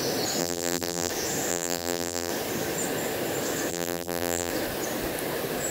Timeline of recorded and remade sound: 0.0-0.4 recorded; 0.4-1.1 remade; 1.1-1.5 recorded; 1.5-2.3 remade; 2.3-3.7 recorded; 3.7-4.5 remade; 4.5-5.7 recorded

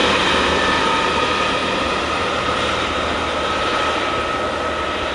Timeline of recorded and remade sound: 0.0-5.1 recorded

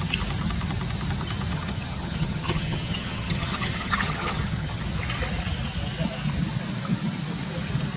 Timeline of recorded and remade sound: 0.0-1.5 recorded; 1.5-4.8 remade; 4.8-8.0 recorded